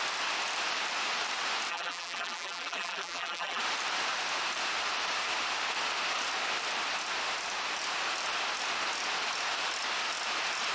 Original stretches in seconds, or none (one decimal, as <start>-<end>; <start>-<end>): 0.0-1.7; 3.6-10.7